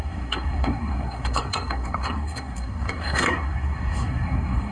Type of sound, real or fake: fake